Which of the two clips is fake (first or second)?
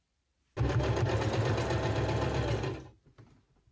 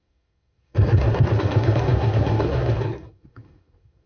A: second